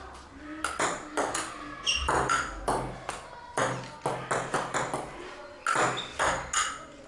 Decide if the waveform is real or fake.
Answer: real